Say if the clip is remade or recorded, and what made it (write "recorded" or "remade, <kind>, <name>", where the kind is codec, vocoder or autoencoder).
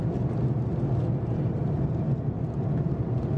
recorded